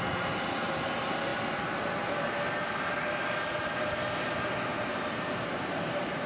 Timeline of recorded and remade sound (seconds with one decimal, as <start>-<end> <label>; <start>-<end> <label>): 0.0-6.3 recorded